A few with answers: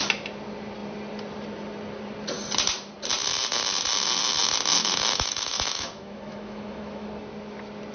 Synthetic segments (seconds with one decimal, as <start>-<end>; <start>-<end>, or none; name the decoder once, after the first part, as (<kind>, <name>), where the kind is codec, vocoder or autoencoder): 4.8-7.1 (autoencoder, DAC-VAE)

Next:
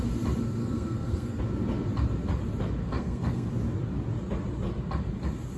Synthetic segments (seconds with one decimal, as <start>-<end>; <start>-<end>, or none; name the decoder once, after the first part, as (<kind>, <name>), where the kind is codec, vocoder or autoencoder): 0.6-1.4 (codec, SNAC); 2.8-3.5

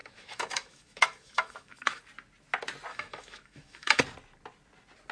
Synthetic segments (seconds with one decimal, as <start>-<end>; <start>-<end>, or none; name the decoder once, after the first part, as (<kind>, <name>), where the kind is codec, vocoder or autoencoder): 0.0-2.0 (autoencoder, DAC-VAE); 2.9-4.0

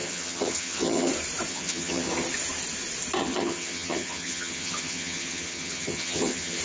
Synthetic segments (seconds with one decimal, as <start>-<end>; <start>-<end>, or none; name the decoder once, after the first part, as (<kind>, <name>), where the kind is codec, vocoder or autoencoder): 0.0-1.1 (vocoder, HiFi-GAN); 1.5-2.1; 3.2-6.6

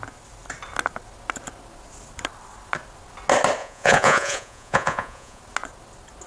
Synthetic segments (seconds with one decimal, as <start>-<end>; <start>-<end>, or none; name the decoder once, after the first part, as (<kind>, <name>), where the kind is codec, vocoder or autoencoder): 3.6-5.4 (vocoder, Vocos)

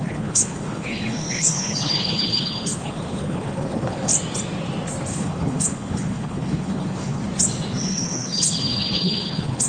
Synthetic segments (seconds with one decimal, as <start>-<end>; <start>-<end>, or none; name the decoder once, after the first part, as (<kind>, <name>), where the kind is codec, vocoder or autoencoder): 0.0-4.1 (codec, HILCodec); 5.1-7.2; 7.8-9.7

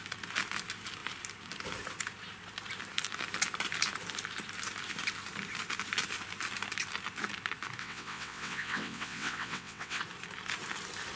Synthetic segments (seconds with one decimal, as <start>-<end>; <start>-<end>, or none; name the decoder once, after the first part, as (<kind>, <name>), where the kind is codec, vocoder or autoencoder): 7.8-10.0 (vocoder, WaveNeXt)